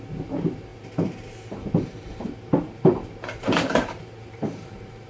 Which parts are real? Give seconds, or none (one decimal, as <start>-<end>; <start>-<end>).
none